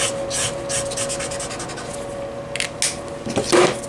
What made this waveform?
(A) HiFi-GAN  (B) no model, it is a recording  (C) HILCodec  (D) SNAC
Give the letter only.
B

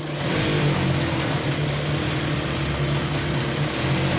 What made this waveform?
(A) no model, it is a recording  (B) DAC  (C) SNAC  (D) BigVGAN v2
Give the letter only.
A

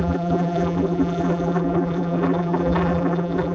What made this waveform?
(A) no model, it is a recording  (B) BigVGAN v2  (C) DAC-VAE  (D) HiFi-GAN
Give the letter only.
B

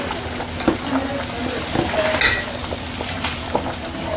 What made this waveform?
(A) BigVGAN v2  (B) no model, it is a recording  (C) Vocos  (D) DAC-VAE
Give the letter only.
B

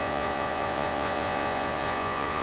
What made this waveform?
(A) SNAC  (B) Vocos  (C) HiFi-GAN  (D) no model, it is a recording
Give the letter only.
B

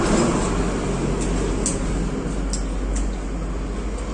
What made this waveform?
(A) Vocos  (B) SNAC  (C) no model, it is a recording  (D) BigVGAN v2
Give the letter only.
C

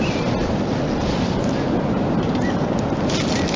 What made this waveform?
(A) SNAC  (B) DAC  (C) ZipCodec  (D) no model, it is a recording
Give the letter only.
D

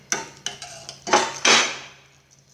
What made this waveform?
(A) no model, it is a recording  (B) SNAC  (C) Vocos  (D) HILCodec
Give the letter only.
A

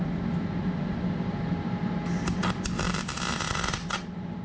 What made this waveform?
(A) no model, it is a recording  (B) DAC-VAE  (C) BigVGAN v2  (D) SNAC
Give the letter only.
C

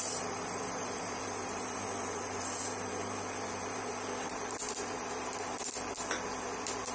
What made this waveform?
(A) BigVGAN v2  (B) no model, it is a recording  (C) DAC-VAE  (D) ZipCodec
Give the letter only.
A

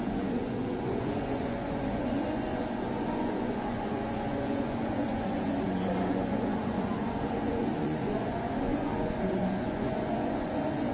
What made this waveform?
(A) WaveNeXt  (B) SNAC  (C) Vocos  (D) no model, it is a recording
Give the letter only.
C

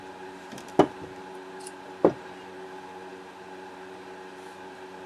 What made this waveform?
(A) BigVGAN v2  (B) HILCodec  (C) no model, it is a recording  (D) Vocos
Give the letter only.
C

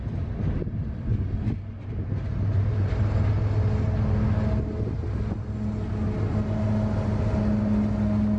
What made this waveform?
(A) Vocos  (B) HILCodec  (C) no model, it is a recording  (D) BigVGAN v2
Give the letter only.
C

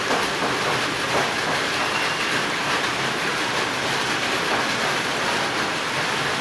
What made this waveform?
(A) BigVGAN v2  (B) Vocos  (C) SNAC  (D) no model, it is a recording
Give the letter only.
D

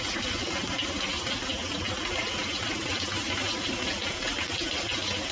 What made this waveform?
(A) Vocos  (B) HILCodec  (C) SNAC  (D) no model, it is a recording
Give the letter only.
D